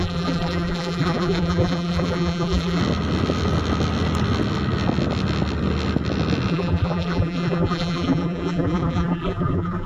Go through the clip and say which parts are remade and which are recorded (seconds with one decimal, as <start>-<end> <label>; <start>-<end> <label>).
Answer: 0.0-2.8 remade; 2.8-6.5 recorded; 6.5-9.9 remade